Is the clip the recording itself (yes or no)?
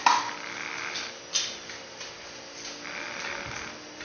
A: yes